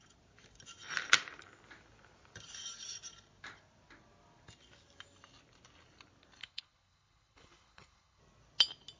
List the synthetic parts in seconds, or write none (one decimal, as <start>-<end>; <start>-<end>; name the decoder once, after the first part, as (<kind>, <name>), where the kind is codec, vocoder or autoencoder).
6.4-8.2 (codec, HILCodec)